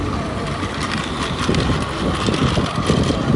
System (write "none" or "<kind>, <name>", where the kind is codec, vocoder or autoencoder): none